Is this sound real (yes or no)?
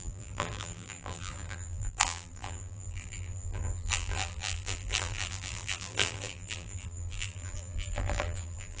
no